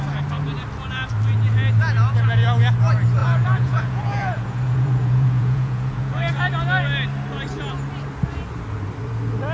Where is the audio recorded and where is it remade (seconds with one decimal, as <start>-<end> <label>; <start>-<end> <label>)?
0.0-3.2 recorded; 3.2-6.3 remade; 6.3-9.5 recorded